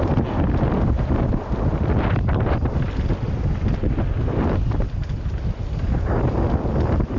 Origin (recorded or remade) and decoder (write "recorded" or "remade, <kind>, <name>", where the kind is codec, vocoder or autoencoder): recorded